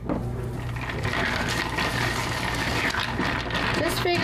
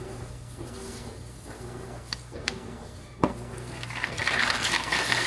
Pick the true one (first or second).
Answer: first